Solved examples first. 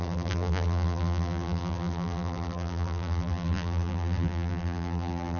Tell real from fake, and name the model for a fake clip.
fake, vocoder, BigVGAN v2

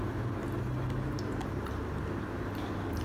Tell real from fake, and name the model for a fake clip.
real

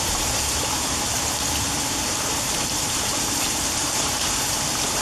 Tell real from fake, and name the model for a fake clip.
fake, vocoder, BigVGAN v2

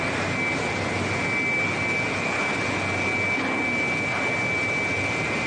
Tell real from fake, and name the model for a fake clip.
real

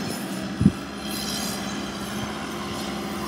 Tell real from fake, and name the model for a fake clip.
real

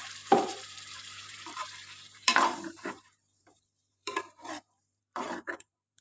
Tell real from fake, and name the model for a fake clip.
fake, vocoder, BigVGAN v2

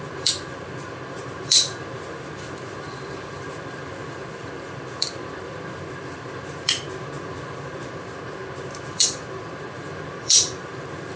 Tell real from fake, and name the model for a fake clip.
fake, vocoder, BigVGAN v2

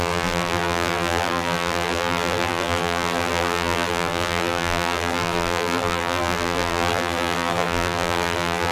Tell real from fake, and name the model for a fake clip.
fake, vocoder, BigVGAN v2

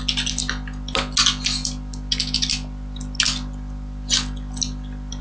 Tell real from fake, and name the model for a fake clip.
real